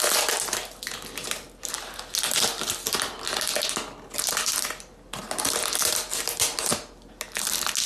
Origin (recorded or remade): recorded